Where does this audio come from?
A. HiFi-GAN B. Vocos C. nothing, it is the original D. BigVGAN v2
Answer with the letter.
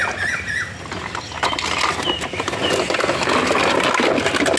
C